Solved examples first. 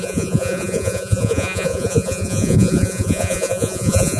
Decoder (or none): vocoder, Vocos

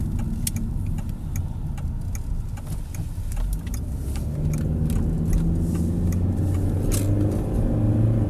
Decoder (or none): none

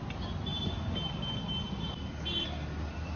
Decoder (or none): none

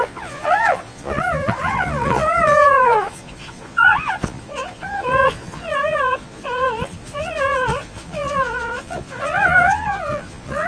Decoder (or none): vocoder, Vocos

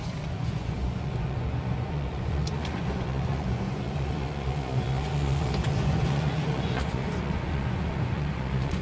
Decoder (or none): vocoder, Vocos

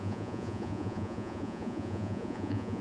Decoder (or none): vocoder, Vocos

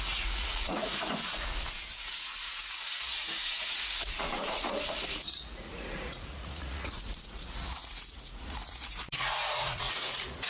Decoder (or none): vocoder, Vocos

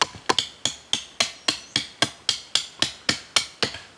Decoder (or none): none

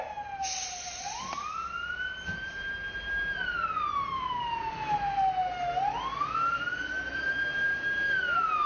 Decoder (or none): none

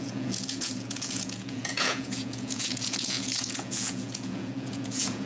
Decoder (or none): vocoder, Vocos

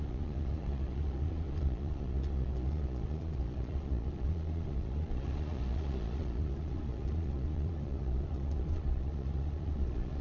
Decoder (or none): vocoder, Vocos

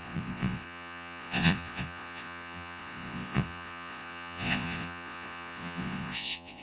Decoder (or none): vocoder, Vocos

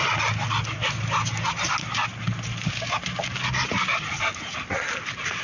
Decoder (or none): none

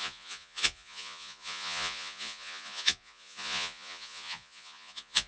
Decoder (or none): vocoder, Vocos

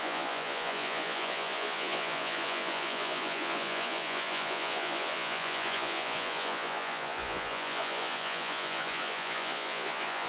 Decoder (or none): vocoder, Vocos